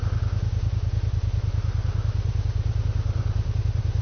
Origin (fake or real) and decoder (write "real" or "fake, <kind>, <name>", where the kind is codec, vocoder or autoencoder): fake, vocoder, BigVGAN v2